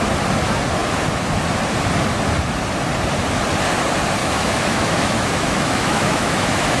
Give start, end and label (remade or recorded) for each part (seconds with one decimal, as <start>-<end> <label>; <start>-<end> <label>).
0.0-4.2 recorded; 4.2-6.8 remade